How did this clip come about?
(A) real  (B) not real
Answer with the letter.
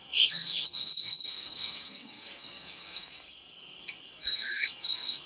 B